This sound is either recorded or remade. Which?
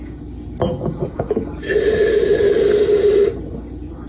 recorded